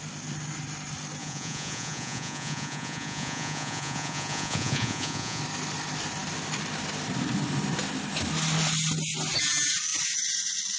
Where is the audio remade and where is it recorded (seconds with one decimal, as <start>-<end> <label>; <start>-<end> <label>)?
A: 0.0-1.2 recorded; 1.2-5.4 remade; 5.4-10.8 recorded